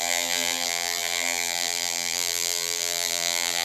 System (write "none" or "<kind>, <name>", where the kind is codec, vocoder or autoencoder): vocoder, BigVGAN v2